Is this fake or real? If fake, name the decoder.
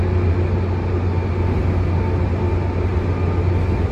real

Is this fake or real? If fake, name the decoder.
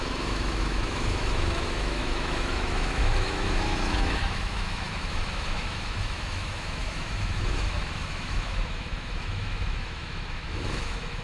fake, autoencoder, DAC-VAE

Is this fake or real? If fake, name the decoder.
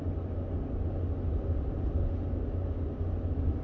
real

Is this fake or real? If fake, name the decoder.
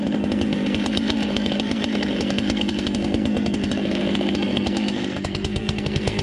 fake, codec, SNAC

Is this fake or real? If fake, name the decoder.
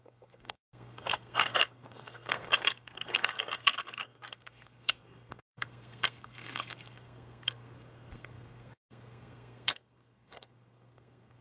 fake, codec, SNAC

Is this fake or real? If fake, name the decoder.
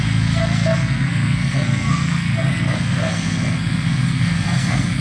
fake, codec, SNAC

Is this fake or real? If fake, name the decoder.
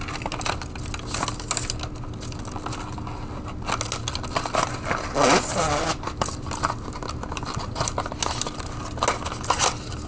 real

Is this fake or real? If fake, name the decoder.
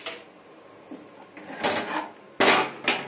real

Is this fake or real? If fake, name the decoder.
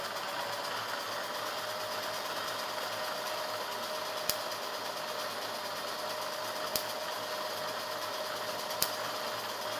real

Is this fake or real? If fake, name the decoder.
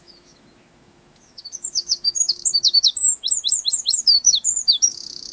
fake, autoencoder, DAC-VAE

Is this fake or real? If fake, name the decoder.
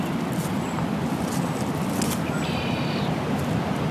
real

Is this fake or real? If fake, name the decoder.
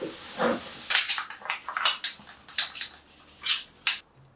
real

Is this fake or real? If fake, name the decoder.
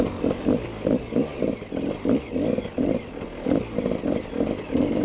real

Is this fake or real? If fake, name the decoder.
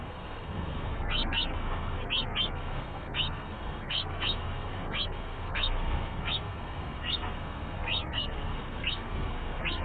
fake, codec, SNAC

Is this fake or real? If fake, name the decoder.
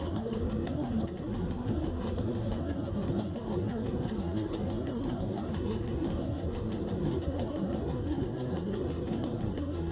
fake, codec, SNAC